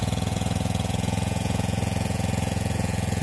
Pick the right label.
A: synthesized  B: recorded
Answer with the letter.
A